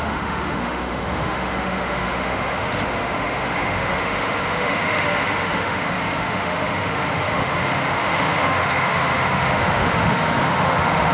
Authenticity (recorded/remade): remade